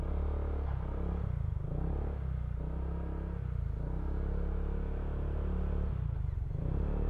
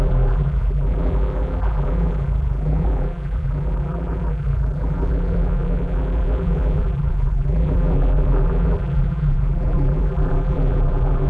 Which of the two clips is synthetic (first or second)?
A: second